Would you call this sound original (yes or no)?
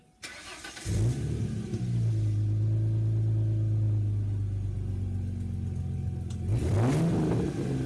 yes